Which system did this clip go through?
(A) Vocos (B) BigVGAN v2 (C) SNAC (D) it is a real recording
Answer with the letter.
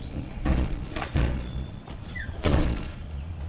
A